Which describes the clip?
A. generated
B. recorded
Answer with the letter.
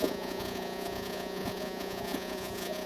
A